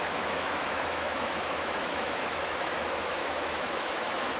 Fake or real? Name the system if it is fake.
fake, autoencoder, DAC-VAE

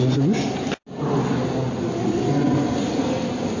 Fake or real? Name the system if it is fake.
real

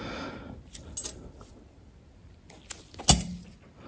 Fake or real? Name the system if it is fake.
real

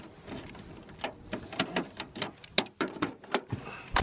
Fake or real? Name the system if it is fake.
real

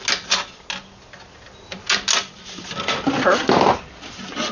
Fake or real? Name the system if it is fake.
real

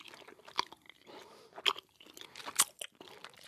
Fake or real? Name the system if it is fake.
real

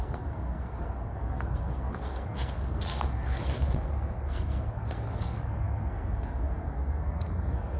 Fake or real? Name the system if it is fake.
fake, codec, SNAC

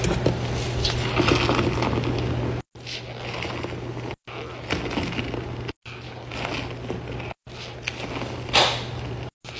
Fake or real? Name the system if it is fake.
real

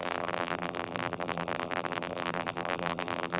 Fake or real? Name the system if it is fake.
fake, vocoder, BigVGAN v2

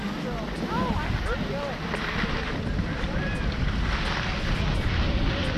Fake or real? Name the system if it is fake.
real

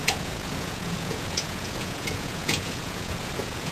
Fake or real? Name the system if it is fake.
fake, vocoder, Vocos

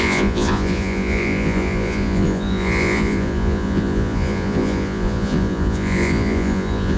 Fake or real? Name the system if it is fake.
fake, vocoder, Vocos